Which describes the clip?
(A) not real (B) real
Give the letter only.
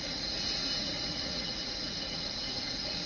A